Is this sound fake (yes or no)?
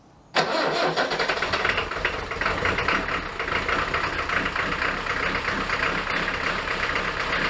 no